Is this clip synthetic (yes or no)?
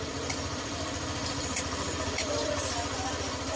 yes